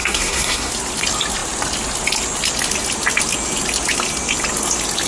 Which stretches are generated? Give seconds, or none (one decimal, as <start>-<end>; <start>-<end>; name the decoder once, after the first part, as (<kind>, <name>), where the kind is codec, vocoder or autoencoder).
0.0-0.7 (codec, SNAC)

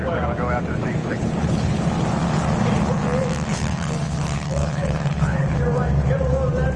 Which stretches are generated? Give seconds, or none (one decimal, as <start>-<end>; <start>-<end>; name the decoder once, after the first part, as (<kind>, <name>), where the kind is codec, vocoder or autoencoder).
1.0-1.8 (codec, HILCodec); 3.5-5.6

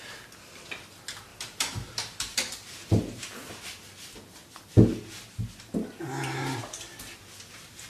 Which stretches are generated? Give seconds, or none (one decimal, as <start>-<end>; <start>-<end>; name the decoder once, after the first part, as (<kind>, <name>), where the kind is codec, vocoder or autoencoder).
1.3-3.6 (vocoder, BigVGAN v2)

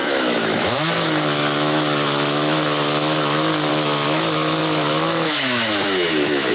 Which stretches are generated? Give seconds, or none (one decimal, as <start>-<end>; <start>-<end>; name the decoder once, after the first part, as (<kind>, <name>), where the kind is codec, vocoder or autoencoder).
0.0-6.5 (autoencoder, DAC-VAE)